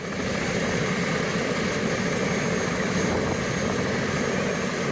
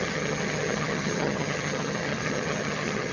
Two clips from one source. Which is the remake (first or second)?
second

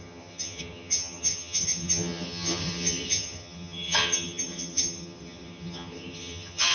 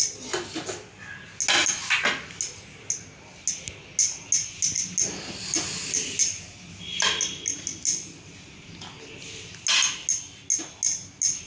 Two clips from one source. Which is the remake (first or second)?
first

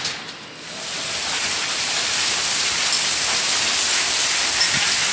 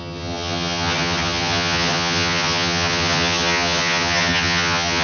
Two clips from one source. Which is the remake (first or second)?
second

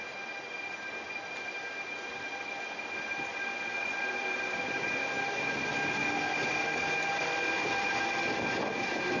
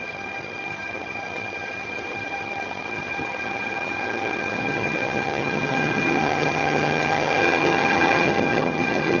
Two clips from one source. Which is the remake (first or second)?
second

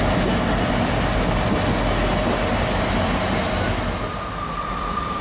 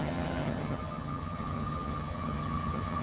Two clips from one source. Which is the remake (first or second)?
second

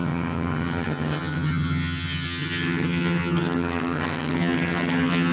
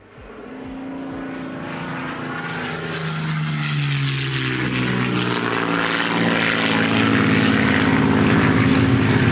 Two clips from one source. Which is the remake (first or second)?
first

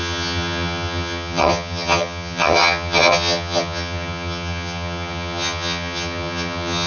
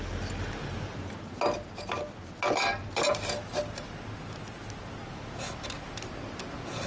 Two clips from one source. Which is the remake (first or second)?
first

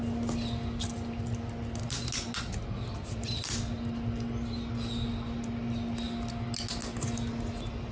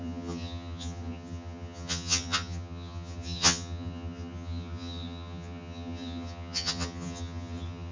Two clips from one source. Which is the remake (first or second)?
second